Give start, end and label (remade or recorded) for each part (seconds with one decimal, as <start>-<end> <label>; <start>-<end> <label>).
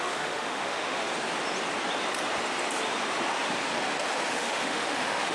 0.0-1.1 remade; 1.1-4.3 recorded; 4.3-5.3 remade